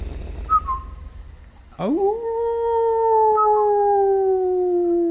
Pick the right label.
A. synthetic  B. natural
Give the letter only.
B